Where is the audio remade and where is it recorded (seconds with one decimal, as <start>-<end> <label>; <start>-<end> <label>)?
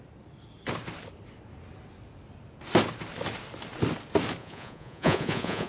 0.0-4.4 recorded; 4.4-5.7 remade